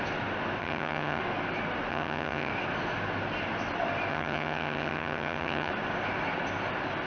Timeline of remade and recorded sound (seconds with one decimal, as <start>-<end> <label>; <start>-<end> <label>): 0.0-0.6 recorded; 0.6-1.2 remade; 1.2-1.9 recorded; 1.9-2.5 remade; 2.5-4.1 recorded; 4.1-5.7 remade; 5.7-7.1 recorded